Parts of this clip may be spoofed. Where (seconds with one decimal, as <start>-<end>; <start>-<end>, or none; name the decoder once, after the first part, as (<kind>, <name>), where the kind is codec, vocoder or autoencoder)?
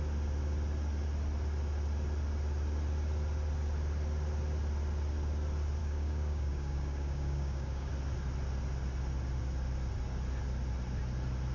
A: 5.8-7.9 (codec, DAC)